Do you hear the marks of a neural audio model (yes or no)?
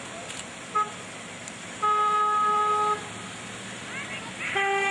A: no